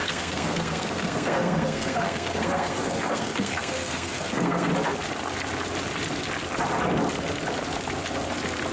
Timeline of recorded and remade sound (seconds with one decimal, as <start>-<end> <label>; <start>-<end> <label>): 0.0-4.7 remade; 4.7-8.7 recorded